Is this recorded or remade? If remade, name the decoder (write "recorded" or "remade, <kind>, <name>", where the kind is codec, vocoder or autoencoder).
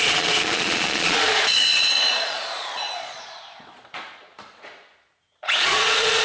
remade, vocoder, Vocos